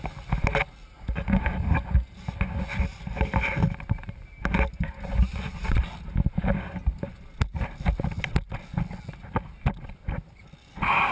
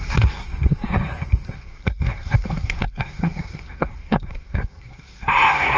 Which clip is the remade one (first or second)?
second